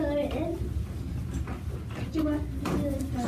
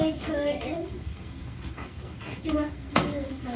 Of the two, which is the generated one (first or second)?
second